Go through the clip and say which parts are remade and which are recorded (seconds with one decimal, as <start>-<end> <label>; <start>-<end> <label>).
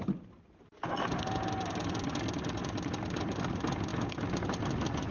0.0-5.1 recorded